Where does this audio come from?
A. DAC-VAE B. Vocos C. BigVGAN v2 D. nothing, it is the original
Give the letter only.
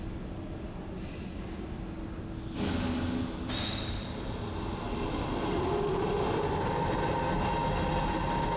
D